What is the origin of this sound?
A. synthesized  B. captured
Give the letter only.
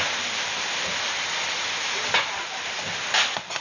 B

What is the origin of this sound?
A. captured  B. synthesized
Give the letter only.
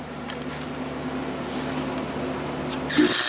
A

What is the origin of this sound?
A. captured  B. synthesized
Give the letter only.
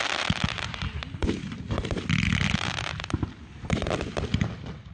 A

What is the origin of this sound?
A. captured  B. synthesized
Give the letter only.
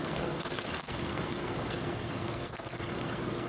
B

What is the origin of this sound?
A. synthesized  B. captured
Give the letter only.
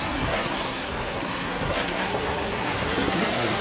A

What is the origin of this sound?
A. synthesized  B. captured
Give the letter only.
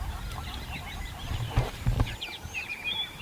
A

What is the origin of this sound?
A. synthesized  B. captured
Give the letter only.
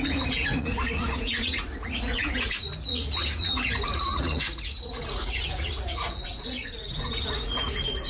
A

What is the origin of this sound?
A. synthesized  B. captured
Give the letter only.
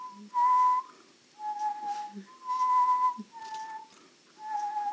B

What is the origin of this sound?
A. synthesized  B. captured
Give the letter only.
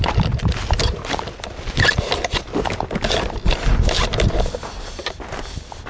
B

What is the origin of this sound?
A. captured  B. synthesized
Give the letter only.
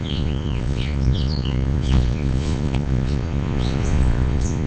B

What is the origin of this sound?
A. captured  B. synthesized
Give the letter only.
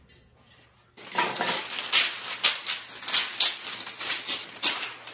A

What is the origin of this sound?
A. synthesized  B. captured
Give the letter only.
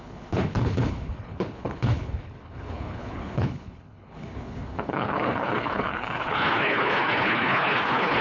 A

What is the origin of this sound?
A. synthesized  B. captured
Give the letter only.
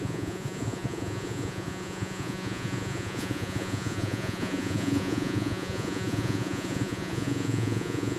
A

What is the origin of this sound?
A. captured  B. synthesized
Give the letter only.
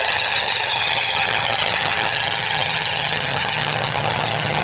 B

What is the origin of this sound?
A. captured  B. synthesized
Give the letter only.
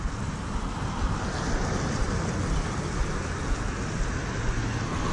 A